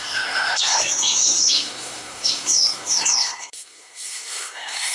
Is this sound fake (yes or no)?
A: yes